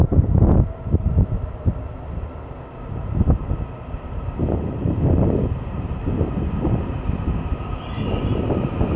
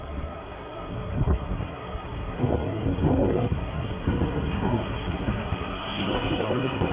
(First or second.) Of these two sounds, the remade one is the second